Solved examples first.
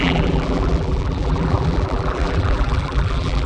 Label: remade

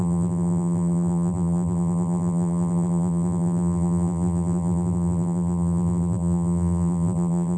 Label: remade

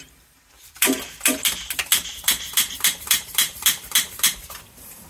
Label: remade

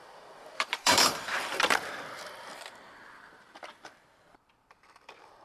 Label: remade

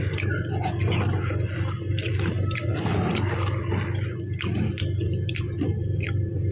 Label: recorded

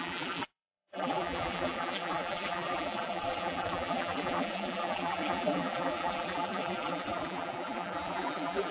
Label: remade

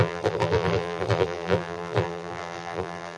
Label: remade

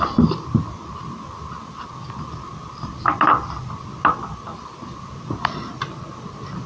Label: recorded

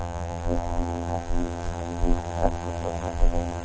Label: remade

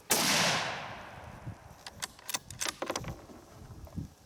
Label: recorded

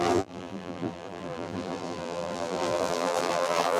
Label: remade